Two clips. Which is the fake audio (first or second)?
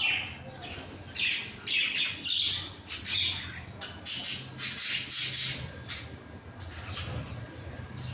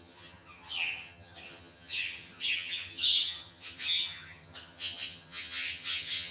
second